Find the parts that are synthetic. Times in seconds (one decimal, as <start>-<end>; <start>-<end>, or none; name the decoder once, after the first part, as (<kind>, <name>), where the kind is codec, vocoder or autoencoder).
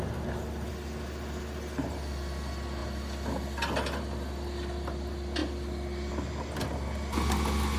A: none